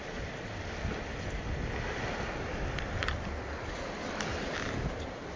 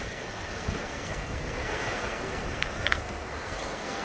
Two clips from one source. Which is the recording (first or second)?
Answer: first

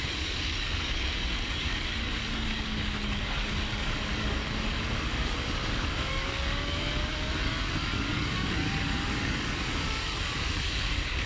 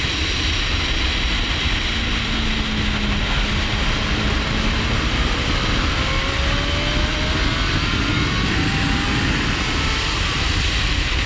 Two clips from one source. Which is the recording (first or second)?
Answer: second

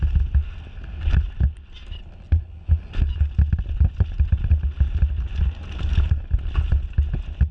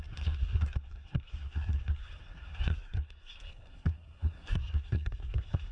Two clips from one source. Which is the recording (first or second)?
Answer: first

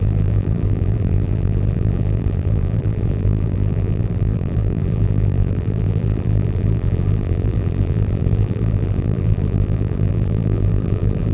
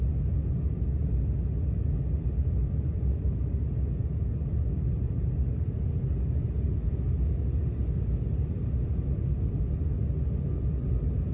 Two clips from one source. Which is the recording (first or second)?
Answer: second